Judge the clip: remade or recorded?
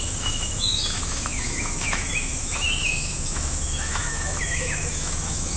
remade